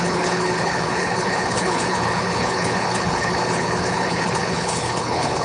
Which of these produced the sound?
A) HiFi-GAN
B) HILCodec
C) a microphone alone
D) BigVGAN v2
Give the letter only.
B